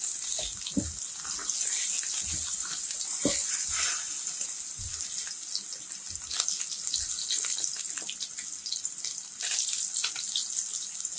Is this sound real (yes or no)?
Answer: yes